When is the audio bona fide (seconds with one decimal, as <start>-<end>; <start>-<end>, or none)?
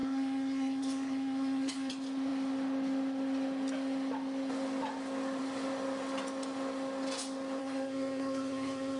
1.9-7.6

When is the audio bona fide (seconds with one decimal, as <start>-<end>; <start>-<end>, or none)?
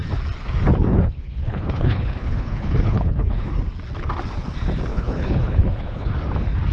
0.0-0.9; 3.5-4.9; 6.1-6.7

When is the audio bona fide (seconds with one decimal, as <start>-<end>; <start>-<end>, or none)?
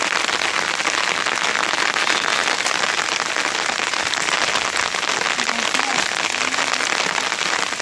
0.0-7.8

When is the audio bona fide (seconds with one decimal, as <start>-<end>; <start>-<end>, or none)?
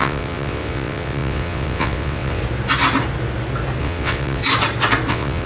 2.4-3.8; 4.4-5.1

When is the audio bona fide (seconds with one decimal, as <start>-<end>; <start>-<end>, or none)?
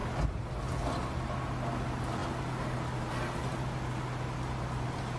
0.0-5.2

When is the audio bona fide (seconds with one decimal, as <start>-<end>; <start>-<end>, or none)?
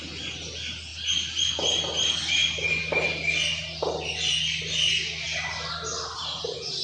0.0-6.8